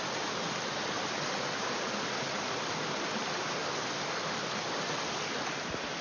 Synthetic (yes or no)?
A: no